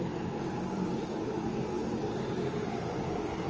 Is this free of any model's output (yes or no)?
no